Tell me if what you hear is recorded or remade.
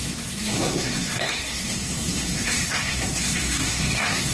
remade